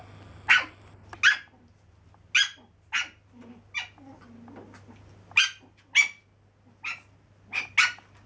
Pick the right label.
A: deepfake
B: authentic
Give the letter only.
B